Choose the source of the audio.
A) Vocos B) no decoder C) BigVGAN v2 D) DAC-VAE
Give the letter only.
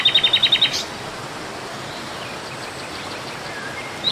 B